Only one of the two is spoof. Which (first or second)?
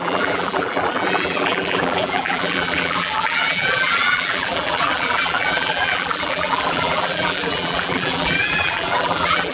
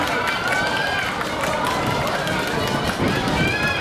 first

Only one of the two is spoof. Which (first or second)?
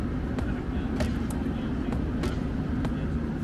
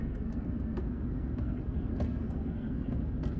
second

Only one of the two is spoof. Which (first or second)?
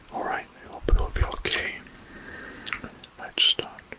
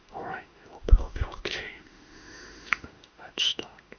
second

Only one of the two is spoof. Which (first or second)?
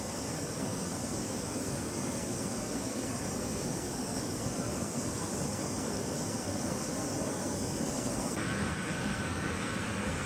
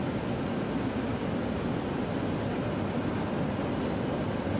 first